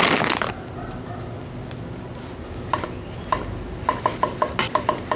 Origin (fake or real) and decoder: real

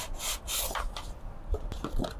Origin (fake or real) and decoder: real